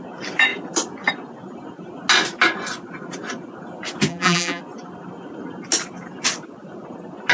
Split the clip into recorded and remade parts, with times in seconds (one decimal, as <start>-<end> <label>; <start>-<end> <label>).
0.0-4.1 recorded; 4.1-4.6 remade; 4.6-7.3 recorded